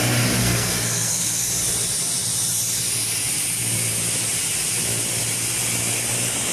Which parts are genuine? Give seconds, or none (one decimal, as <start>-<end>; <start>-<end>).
0.0-0.4; 1.5-6.5